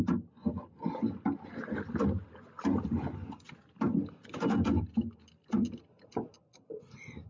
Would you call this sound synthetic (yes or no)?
no